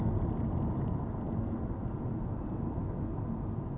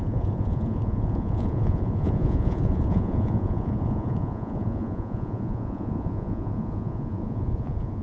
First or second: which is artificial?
second